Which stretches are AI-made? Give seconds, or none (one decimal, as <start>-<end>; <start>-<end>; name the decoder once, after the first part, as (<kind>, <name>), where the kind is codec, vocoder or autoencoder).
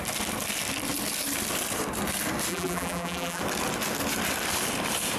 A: 2.5-3.4 (vocoder, BigVGAN v2)